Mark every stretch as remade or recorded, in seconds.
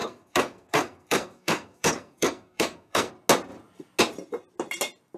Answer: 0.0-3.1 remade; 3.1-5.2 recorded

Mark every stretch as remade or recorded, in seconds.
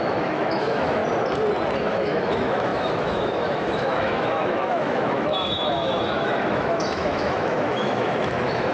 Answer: 0.0-1.0 remade; 1.0-1.8 recorded; 1.8-8.7 remade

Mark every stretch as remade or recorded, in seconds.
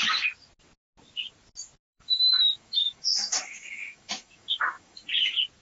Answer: 0.0-1.9 recorded; 1.9-5.1 remade; 5.1-5.6 recorded